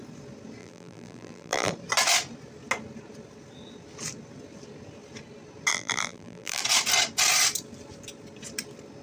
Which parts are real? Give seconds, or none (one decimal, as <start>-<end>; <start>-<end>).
0.0-0.6; 1.7-5.7; 6.6-9.0